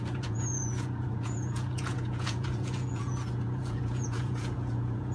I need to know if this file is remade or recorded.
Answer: remade